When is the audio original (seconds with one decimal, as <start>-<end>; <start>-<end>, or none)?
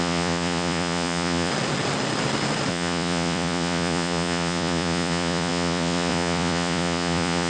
1.5-2.7